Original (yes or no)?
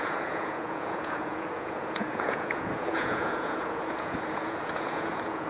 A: no